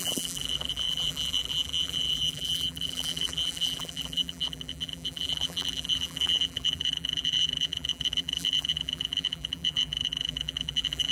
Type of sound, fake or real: fake